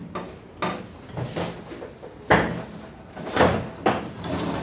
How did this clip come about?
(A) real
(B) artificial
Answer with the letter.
A